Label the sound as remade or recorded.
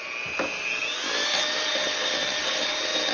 recorded